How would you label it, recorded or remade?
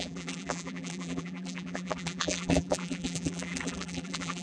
remade